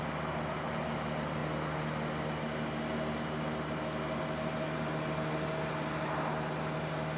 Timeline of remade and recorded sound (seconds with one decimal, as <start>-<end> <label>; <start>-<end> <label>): 0.0-7.2 recorded